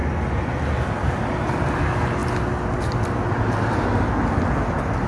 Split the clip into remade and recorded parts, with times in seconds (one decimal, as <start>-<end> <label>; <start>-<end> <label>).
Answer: 0.0-5.1 recorded